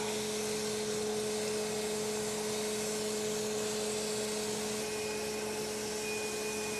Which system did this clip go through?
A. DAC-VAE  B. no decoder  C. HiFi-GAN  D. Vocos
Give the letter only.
B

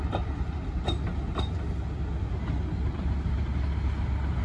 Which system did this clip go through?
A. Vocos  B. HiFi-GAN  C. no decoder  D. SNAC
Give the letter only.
C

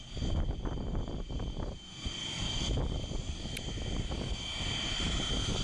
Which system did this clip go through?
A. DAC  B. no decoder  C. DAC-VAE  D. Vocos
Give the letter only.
B